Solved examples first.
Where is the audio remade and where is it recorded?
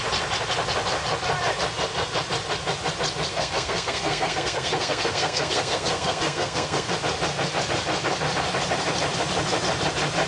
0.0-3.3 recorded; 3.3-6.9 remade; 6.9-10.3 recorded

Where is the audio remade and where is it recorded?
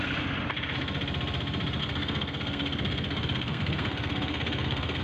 0.0-1.8 recorded; 1.8-5.0 remade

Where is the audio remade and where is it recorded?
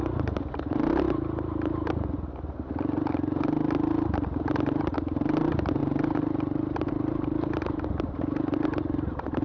0.0-9.4 recorded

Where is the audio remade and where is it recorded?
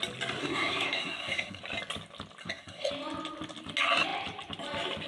0.0-0.4 recorded; 0.4-1.6 remade; 1.6-2.4 recorded; 2.4-2.9 remade; 2.9-5.1 recorded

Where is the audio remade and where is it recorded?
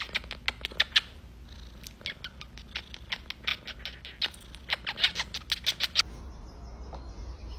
0.0-7.6 recorded